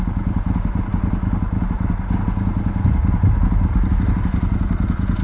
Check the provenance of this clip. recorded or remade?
recorded